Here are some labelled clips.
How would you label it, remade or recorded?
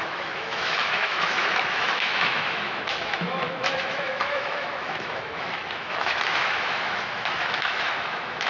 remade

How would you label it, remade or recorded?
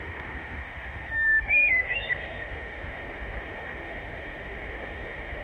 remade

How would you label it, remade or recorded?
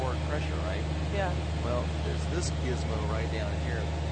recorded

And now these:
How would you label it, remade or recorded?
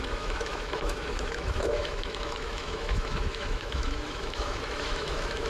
remade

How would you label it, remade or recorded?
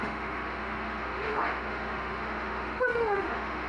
remade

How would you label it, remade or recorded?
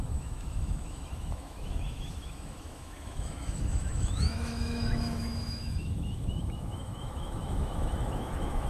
remade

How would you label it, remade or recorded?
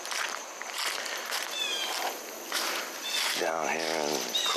recorded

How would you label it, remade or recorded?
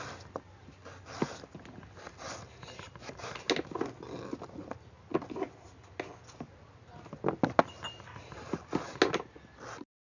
recorded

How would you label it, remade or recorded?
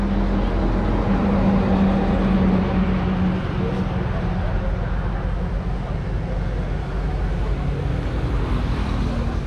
recorded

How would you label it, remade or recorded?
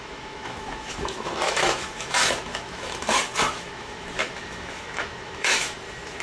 remade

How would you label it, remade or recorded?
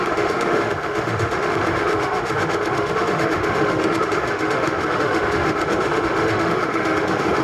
remade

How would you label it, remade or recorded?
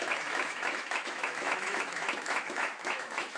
remade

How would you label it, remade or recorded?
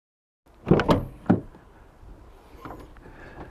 recorded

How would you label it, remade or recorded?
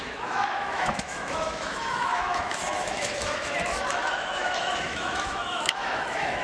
remade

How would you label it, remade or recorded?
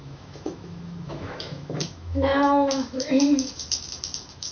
remade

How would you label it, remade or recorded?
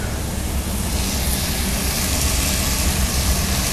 recorded